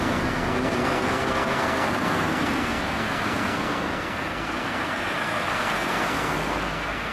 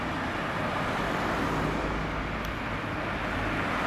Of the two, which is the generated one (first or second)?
first